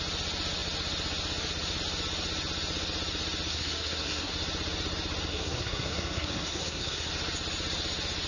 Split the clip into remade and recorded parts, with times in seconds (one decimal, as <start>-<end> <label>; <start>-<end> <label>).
0.0-3.5 recorded; 3.5-4.3 remade; 4.3-5.3 recorded; 5.3-7.1 remade; 7.1-8.3 recorded